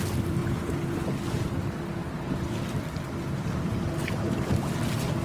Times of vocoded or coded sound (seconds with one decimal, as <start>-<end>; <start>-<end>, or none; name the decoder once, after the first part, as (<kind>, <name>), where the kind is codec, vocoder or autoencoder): 0.0-0.4 (vocoder, BigVGAN v2); 3.5-5.2